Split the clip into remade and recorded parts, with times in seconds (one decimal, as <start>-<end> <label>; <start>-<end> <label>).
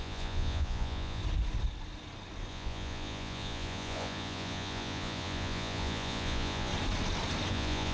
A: 0.0-1.2 remade; 1.2-2.5 recorded; 2.5-6.7 remade; 6.7-7.5 recorded; 7.5-7.9 remade